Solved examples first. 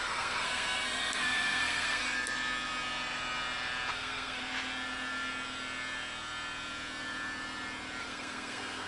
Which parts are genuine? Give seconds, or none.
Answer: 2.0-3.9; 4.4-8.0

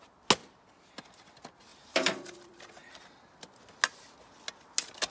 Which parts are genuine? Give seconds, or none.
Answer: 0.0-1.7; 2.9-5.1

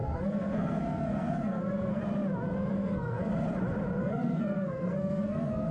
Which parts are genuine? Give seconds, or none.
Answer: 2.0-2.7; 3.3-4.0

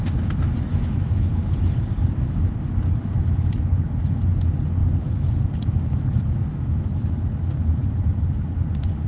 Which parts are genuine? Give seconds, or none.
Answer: 0.0-0.7; 1.4-4.8; 7.0-9.1

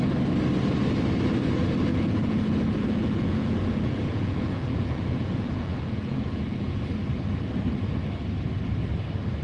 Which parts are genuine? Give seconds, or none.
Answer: 0.0-1.9; 6.8-9.4

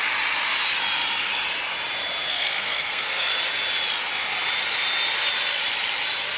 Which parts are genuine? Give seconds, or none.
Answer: 0.0-2.3; 3.3-6.4

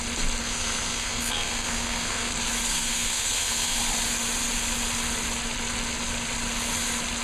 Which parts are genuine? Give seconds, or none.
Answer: 0.0-0.4; 2.3-2.7; 3.8-7.2